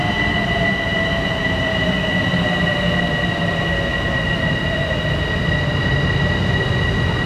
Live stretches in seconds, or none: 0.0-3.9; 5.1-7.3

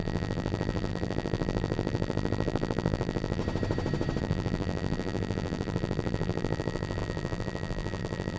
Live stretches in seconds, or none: 3.4-4.2

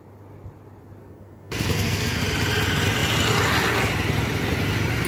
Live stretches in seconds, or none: 0.0-1.0; 2.2-5.1

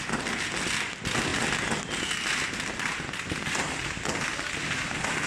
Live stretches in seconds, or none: 0.0-5.3

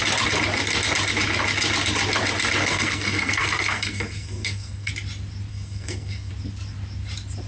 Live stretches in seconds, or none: 0.0-2.6; 4.9-5.5; 6.3-7.5

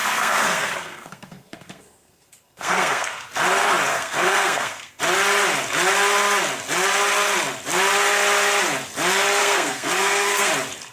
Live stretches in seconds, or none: 3.3-3.9; 5.0-9.4; 10.5-10.9

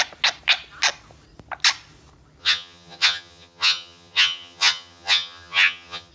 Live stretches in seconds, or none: 0.0-2.4